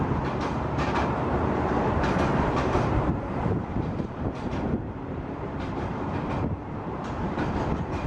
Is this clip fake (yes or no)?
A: yes